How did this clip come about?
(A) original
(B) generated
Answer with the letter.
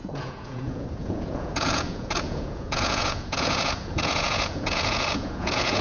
B